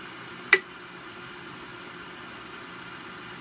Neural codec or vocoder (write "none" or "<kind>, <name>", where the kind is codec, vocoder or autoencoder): none